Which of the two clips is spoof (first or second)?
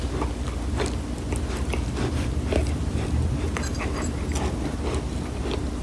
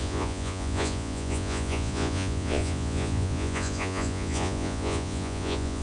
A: second